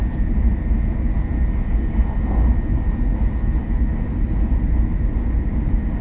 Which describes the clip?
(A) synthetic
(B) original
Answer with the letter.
B